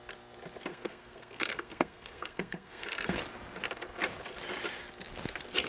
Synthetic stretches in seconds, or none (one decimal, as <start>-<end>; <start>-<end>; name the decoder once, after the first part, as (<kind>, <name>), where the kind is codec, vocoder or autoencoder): 0.7-3.2 (codec, SNAC)